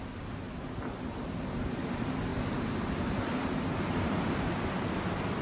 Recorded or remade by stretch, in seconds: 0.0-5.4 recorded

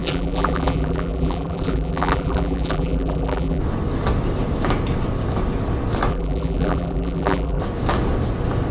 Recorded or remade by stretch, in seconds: 0.0-3.6 remade; 3.6-6.1 recorded; 6.1-7.6 remade; 7.6-8.7 recorded

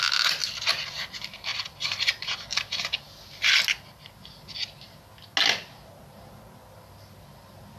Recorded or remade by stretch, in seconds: 0.0-7.8 recorded

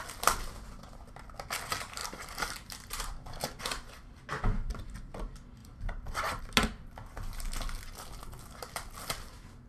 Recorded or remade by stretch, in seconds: 0.0-2.0 recorded; 2.0-3.6 remade; 3.6-5.6 recorded; 5.6-6.4 remade; 6.4-9.7 recorded

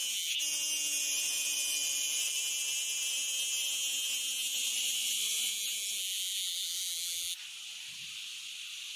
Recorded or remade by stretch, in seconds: 0.0-0.9 recorded; 0.9-2.4 remade; 2.4-4.6 recorded; 4.6-5.5 remade; 5.5-7.6 recorded; 7.6-9.0 remade